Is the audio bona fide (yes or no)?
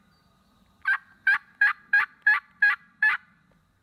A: yes